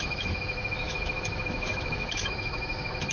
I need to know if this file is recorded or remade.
remade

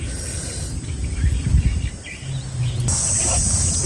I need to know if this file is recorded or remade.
recorded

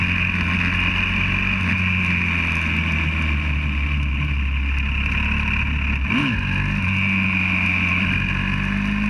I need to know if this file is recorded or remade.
recorded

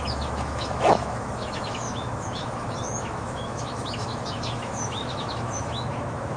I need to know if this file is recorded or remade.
remade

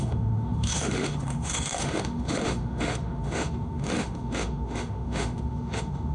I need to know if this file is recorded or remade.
remade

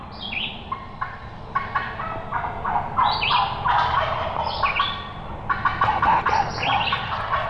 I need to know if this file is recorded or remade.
recorded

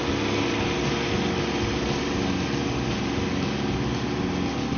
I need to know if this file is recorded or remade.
recorded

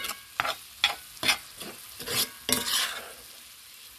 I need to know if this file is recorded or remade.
recorded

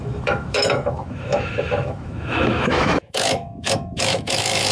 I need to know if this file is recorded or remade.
remade